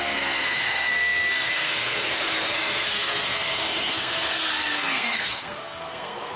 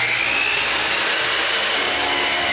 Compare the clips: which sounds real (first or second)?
second